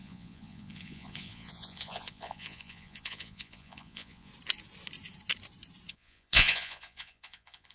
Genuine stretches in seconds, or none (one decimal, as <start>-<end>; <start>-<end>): 4.3-5.9